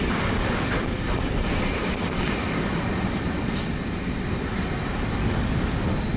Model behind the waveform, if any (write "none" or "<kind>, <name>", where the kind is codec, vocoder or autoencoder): none